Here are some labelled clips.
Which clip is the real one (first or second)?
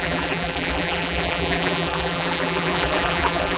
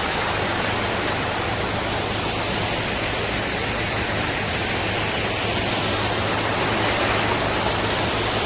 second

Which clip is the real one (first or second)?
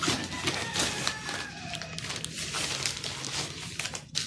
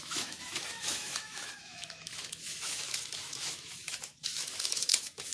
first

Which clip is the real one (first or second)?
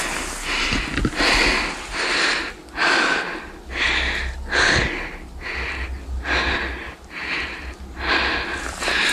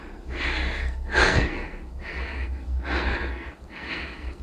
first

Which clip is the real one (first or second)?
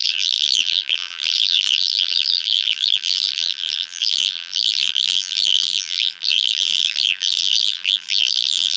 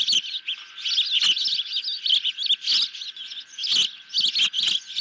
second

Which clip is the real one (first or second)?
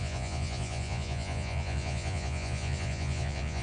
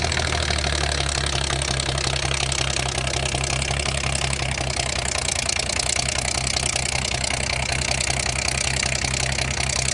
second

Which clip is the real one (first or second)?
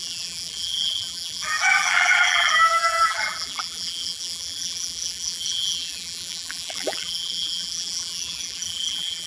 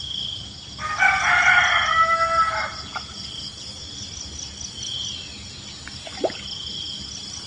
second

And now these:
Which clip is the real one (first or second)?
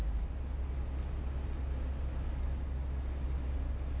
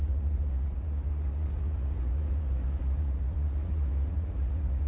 first